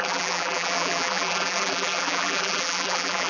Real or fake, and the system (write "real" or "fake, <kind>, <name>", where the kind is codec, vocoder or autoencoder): fake, vocoder, BigVGAN v2